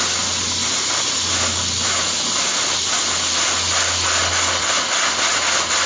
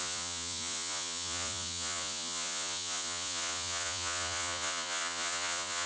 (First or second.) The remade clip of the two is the second